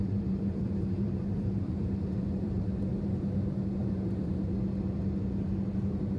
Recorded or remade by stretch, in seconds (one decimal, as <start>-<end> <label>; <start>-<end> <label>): 0.0-3.2 remade; 3.2-3.8 recorded; 3.8-4.3 remade; 4.3-6.2 recorded